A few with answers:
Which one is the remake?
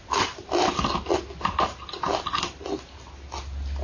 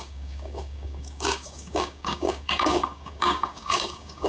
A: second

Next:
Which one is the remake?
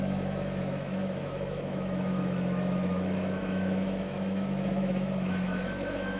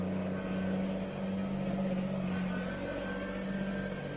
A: first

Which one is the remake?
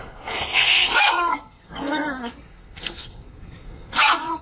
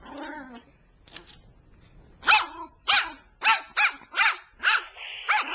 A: first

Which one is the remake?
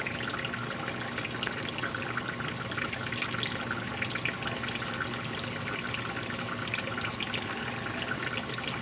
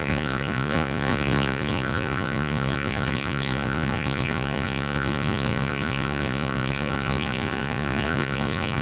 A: second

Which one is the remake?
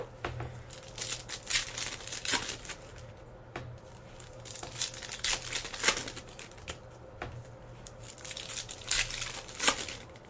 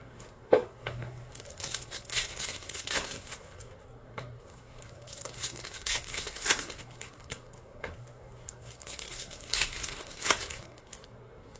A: second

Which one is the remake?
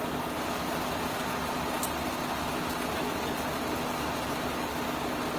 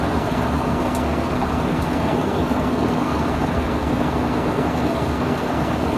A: second